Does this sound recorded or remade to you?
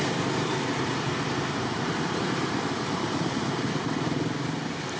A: remade